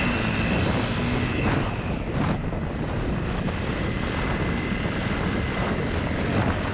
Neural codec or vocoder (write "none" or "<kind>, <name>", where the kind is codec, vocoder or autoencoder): vocoder, BigVGAN v2